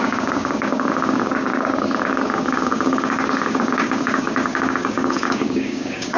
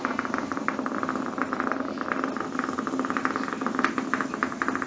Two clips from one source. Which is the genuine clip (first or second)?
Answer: second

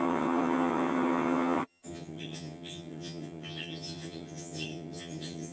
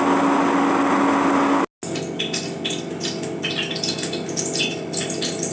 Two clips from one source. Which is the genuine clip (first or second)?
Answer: second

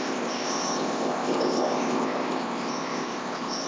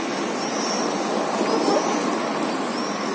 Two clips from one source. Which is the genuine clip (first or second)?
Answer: second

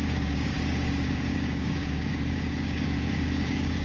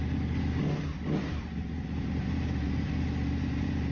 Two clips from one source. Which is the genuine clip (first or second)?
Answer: second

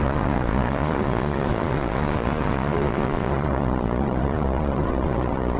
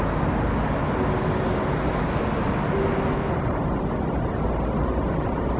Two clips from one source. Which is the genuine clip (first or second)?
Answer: second